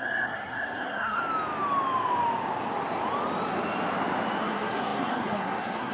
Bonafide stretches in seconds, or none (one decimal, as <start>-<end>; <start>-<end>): 1.2-4.4